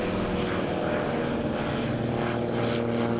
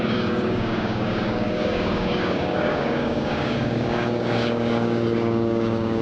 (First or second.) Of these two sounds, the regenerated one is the second